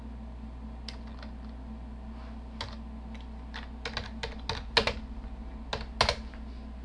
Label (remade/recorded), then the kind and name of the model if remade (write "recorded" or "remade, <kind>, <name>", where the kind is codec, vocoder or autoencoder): recorded